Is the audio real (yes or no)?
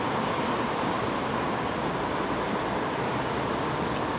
yes